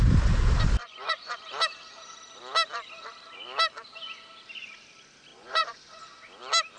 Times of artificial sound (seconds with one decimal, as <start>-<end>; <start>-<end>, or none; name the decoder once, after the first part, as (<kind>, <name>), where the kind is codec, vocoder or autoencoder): 0.8-1.4 (vocoder, Vocos); 5.3-6.0